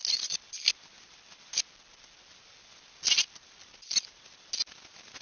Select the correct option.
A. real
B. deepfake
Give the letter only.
A